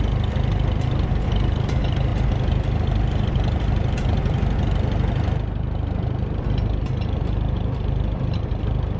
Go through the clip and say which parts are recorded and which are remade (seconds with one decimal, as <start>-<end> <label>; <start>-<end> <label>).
0.0-9.0 recorded

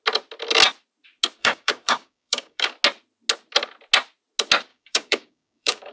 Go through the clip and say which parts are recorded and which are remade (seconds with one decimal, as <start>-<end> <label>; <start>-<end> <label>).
0.0-1.4 recorded; 1.4-2.7 remade; 2.7-4.7 recorded; 4.7-5.9 remade

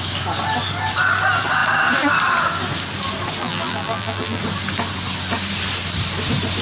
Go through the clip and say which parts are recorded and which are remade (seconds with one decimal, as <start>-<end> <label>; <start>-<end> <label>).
0.0-3.4 recorded; 3.4-4.4 remade; 4.4-6.6 recorded

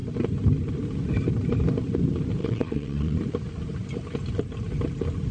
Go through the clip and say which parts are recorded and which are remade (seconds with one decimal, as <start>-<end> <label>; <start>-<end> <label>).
0.0-2.4 recorded; 2.4-3.2 remade; 3.2-5.3 recorded

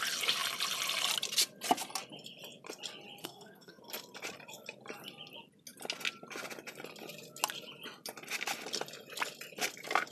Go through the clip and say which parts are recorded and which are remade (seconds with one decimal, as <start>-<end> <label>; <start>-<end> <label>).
0.0-3.2 recorded; 3.2-3.8 remade; 3.8-10.1 recorded

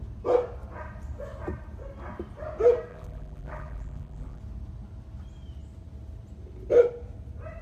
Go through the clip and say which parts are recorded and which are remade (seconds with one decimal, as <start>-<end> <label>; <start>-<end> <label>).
0.0-2.9 recorded; 2.9-4.4 remade; 4.4-7.6 recorded

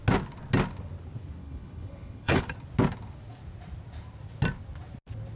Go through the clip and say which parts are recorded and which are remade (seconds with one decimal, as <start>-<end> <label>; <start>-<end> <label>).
0.0-1.4 recorded; 1.4-2.4 remade; 2.4-5.4 recorded